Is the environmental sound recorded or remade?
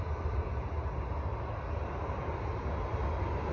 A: recorded